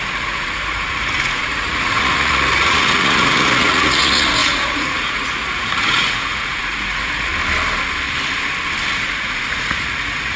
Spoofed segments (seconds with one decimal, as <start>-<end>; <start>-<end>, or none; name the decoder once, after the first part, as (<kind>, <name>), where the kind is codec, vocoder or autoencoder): 0.0-7.3 (vocoder, Vocos); 9.0-10.4